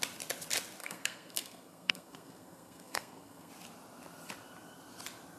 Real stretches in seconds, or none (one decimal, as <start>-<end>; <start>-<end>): 0.0-0.8; 3.5-5.4